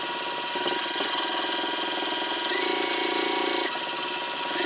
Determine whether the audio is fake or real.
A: real